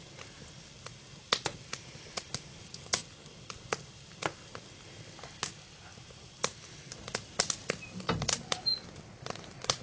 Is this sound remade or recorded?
recorded